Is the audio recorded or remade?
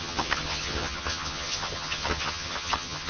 remade